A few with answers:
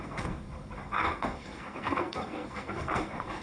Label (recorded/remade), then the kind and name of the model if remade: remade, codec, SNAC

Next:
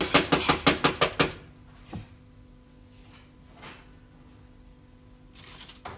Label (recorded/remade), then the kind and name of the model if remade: recorded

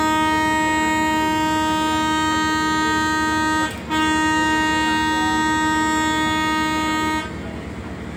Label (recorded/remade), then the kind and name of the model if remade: recorded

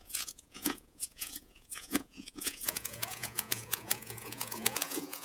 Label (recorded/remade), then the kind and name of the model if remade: remade, vocoder, Vocos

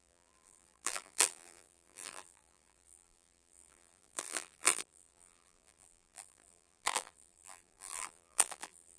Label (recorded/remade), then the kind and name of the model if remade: remade, vocoder, BigVGAN v2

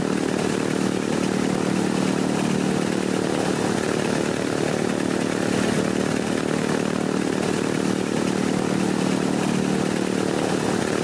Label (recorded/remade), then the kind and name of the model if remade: recorded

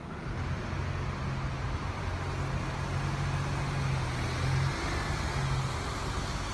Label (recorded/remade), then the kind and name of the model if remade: recorded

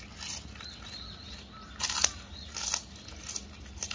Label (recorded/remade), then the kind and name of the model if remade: recorded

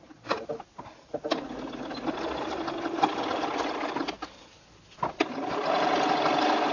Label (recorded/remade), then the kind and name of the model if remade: recorded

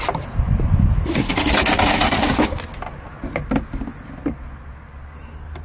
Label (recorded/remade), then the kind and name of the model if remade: recorded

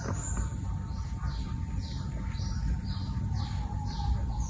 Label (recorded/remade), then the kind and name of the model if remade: recorded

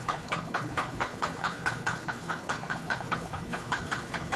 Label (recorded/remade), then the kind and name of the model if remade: remade, codec, HILCodec